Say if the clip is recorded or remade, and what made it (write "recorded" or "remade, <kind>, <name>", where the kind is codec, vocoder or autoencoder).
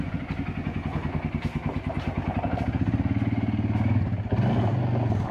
recorded